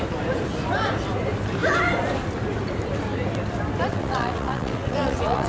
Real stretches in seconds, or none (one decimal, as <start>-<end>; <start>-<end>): 0.0-3.9